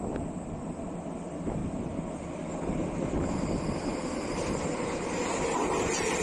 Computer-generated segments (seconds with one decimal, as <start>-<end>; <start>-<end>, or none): none